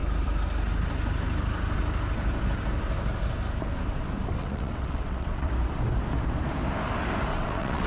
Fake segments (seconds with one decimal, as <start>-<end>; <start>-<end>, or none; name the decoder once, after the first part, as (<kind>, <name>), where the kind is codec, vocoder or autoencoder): 4.4-5.5 (vocoder, WaveNeXt); 7.3-7.9